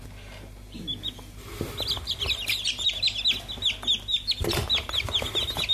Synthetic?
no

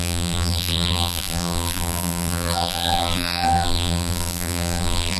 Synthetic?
yes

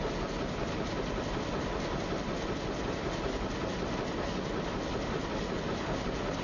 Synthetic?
no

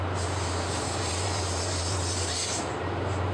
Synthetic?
yes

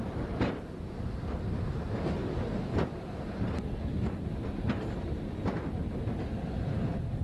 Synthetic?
no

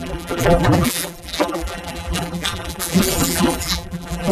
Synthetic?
yes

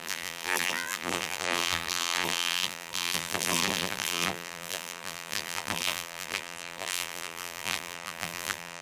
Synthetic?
yes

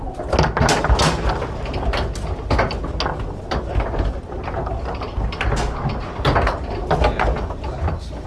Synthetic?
no